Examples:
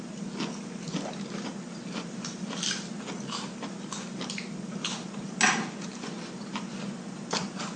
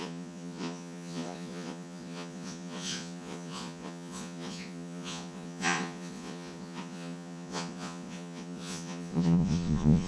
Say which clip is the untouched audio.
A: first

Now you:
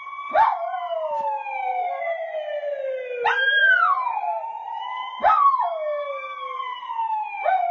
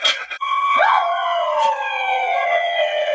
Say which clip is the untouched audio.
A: first